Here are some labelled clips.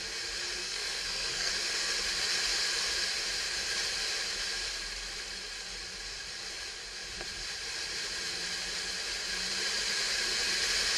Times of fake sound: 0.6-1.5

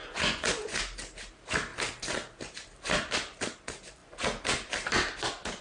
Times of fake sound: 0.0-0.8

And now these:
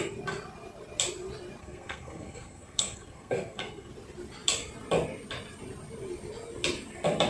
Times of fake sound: 1.6-3.9